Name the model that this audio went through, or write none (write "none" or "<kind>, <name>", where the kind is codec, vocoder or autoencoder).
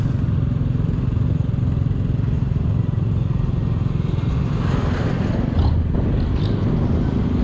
none